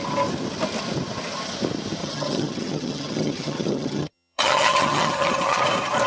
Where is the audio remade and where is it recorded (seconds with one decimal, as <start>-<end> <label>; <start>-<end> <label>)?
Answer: 0.0-2.0 recorded; 2.0-5.6 remade; 5.6-6.1 recorded